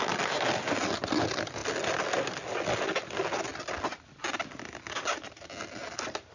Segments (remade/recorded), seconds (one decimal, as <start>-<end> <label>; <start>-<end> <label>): 0.0-6.3 recorded